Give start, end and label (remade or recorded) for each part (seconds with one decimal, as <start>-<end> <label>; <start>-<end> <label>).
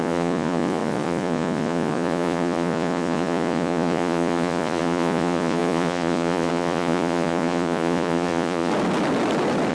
0.0-8.7 remade; 8.7-9.7 recorded